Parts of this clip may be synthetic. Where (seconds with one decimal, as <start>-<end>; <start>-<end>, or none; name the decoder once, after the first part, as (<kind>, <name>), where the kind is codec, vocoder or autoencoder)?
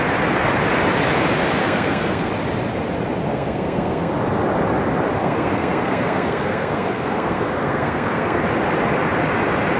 1.6-2.3 (codec, SNAC); 3.2-4.1; 5.2-8.4